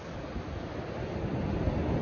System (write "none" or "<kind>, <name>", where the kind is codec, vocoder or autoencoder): none